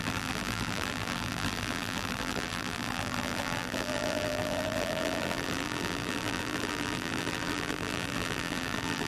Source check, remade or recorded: remade